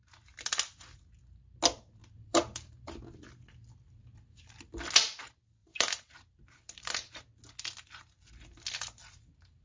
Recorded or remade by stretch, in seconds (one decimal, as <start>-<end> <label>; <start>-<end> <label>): 0.0-2.0 recorded; 2.0-2.8 remade; 2.8-5.6 recorded; 5.6-7.2 remade; 7.2-9.6 recorded